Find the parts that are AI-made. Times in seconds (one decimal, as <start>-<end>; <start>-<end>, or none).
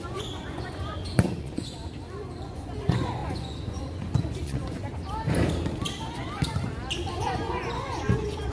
0.0-1.8; 2.4-4.8; 7.2-8.5